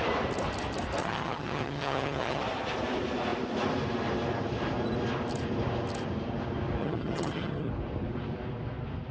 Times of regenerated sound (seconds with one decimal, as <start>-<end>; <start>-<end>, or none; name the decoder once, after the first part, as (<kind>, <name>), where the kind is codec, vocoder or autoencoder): 1.0-2.4 (vocoder, HiFi-GAN); 6.8-7.7